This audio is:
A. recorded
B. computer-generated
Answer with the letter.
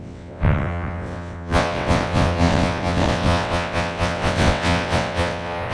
B